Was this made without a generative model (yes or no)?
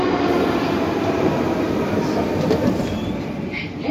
yes